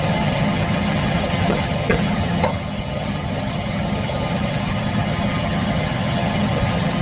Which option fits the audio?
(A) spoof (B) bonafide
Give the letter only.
A